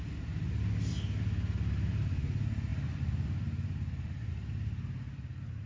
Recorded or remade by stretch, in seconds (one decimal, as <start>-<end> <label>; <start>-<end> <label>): 0.0-2.7 recorded; 2.7-4.3 remade; 4.3-5.7 recorded